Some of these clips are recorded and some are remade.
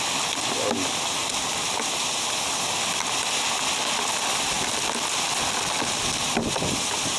recorded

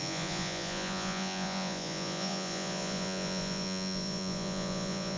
remade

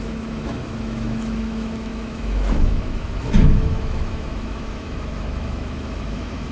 remade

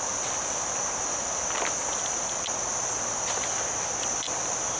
recorded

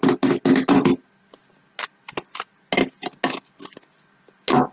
recorded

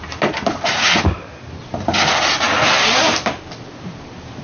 recorded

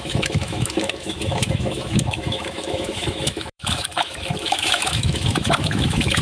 remade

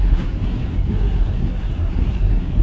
remade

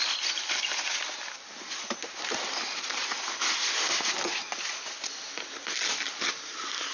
recorded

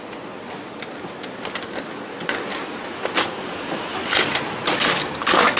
recorded